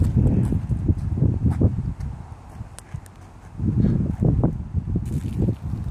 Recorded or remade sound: recorded